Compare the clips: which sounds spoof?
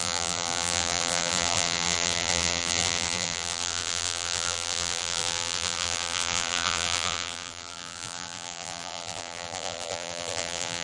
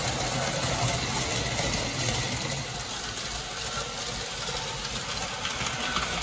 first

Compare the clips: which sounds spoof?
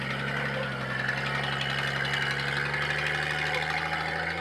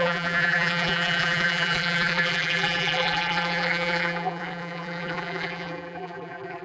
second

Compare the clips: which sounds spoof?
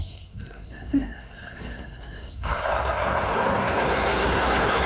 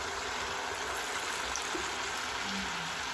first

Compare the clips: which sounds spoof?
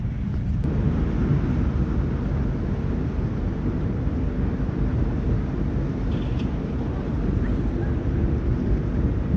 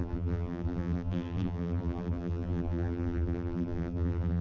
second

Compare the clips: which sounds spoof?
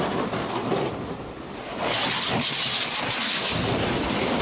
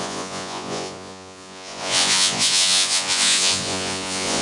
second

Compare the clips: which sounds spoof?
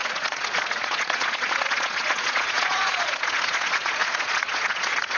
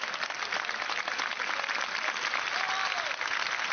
first